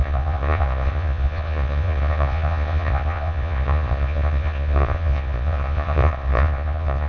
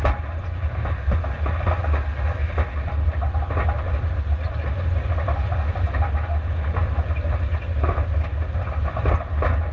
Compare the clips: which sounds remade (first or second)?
first